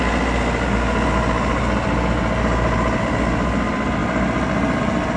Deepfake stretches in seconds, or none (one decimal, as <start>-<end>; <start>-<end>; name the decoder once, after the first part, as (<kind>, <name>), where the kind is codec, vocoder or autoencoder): none